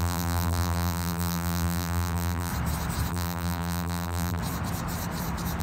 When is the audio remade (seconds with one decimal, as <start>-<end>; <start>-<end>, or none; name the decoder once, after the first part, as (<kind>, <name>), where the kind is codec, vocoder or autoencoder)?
0.0-2.5 (vocoder, BigVGAN v2); 3.1-4.4